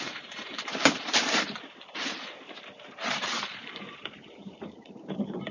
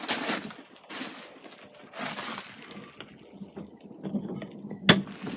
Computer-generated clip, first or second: first